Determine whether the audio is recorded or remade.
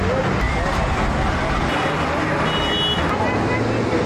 recorded